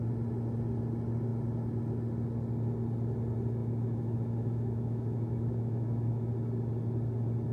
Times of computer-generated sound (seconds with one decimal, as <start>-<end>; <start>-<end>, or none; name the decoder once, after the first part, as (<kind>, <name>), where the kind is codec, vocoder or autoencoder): 3.6-6.3 (autoencoder, DAC-VAE)